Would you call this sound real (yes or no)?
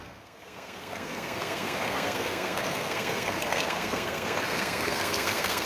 no